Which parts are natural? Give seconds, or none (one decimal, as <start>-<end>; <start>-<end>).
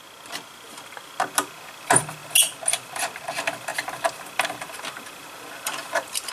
0.0-3.7